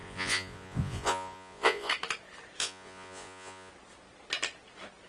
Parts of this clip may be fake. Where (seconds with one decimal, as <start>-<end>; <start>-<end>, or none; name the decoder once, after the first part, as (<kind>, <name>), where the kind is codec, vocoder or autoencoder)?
0.0-1.9 (vocoder, Vocos); 2.6-3.7

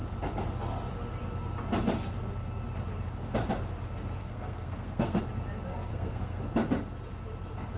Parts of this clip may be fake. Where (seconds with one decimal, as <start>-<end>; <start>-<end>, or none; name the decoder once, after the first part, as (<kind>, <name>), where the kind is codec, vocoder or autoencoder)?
4.2-5.2 (codec, SNAC); 5.9-6.4

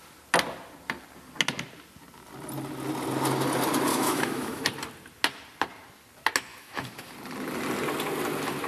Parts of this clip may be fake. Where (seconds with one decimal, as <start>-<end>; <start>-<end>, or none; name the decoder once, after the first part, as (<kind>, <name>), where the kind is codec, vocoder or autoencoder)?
3.9-4.6 (autoencoder, DAC-VAE); 6.5-7.1

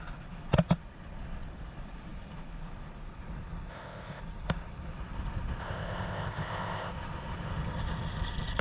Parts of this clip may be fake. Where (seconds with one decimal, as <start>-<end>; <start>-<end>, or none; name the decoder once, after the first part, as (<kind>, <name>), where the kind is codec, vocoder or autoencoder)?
3.7-4.2 (codec, ZipCodec); 5.6-6.9

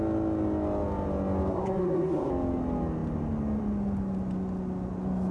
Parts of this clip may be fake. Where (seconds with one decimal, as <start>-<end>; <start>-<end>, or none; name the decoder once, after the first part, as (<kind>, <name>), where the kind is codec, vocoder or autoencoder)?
1.5-2.3 (codec, SNAC)